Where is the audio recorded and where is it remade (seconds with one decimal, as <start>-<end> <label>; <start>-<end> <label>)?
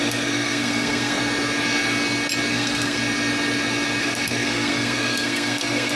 0.0-1.2 remade; 1.2-2.5 recorded; 2.5-3.0 remade; 3.0-4.0 recorded; 4.0-6.0 remade